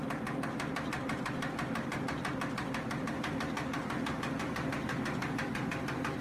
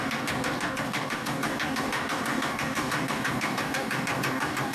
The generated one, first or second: second